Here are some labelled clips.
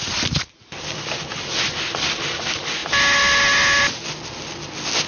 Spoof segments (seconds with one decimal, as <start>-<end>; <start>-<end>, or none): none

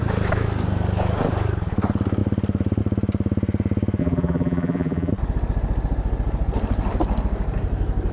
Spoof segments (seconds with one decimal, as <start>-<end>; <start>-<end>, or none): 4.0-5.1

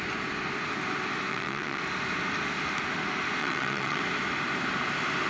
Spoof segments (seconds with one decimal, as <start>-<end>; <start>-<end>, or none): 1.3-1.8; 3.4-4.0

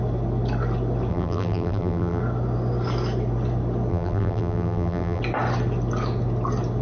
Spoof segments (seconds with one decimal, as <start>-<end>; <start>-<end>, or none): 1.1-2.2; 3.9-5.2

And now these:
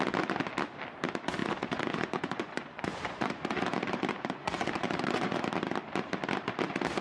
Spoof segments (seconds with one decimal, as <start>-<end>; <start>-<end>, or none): 1.4-5.5

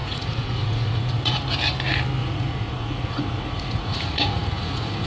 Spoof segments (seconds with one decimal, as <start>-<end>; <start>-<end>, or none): 0.0-1.4; 2.2-5.1

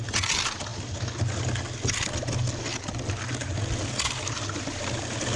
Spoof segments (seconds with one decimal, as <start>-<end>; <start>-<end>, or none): none

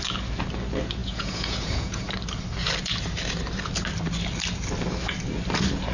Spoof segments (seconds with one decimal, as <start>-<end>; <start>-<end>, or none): 1.0-2.0